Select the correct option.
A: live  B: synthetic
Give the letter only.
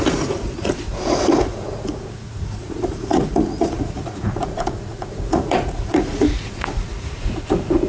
B